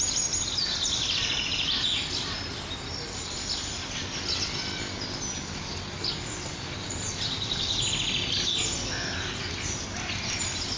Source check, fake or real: real